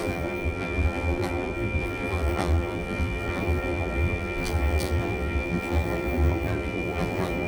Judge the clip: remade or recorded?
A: remade